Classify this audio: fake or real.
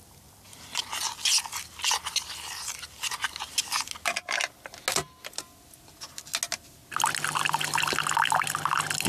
real